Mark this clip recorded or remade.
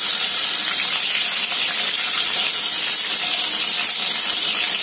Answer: recorded